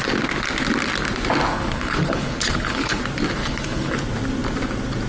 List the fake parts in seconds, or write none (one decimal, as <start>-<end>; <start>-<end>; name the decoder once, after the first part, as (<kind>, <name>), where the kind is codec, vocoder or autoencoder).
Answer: 1.5-3.0 (codec, HILCodec); 3.4-4.0